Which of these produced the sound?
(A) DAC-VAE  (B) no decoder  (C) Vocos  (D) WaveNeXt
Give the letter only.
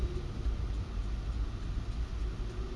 B